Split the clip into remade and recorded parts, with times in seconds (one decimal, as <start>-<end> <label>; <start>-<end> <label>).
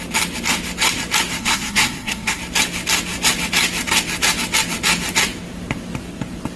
0.0-1.4 recorded; 1.4-2.4 remade; 2.4-6.6 recorded